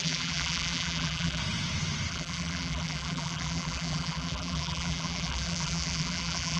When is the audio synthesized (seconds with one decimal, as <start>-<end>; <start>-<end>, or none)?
0.0-1.4; 2.1-6.6